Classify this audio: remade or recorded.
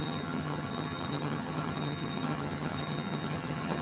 remade